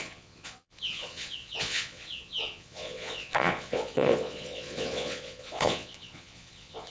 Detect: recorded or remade remade